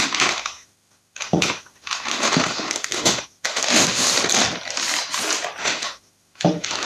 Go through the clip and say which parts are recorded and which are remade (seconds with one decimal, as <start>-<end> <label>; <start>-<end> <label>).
0.0-4.1 remade; 4.1-5.6 recorded; 5.6-6.9 remade

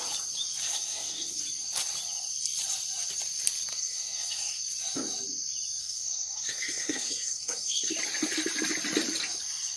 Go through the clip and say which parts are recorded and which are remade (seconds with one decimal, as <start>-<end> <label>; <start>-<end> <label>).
0.0-0.6 recorded; 0.6-1.4 remade; 1.4-3.7 recorded; 3.7-4.6 remade; 4.6-5.8 recorded; 5.8-7.9 remade; 7.9-9.8 recorded

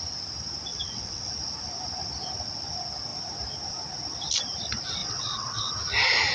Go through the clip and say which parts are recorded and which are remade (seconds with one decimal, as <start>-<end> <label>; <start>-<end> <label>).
0.0-0.7 recorded; 0.7-1.3 remade; 1.3-5.0 recorded; 5.0-5.7 remade; 5.7-6.3 recorded

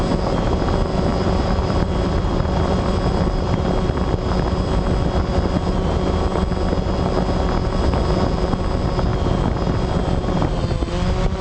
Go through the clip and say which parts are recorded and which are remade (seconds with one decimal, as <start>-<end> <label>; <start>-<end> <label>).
0.0-1.1 recorded; 1.1-3.7 remade; 3.7-11.4 recorded